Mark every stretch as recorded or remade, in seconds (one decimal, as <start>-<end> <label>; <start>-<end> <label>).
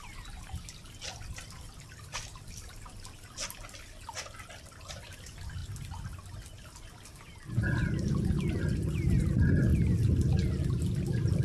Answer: 0.0-11.4 recorded